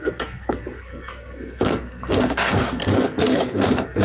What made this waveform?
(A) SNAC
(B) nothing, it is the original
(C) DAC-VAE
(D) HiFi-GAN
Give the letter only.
A